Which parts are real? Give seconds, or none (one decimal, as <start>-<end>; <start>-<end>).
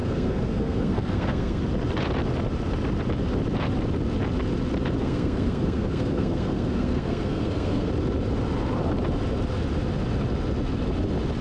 1.6-5.0; 7.9-11.4